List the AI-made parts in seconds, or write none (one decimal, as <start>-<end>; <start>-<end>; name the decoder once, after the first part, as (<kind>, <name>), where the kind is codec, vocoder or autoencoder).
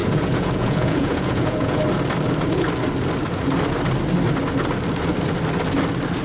0.0-1.8 (vocoder, Vocos)